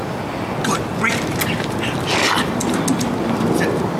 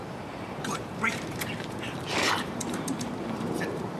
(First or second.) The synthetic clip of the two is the second